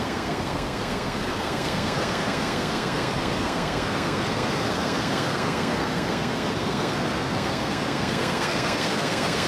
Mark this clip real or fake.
fake